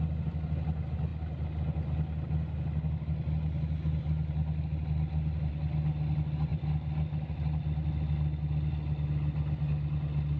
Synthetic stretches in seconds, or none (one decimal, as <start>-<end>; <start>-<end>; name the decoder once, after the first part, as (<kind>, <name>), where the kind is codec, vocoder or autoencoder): none